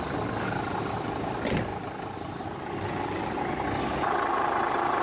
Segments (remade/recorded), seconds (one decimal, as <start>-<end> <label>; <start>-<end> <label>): 0.0-5.0 recorded